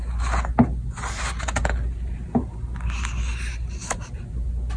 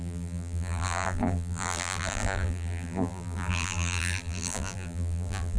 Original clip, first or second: first